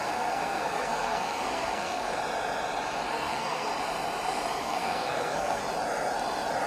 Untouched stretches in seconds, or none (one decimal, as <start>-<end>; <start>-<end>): 2.2-3.1; 3.7-4.6; 5.6-6.7